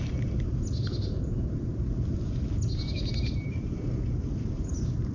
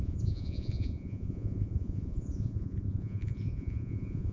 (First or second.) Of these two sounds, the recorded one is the first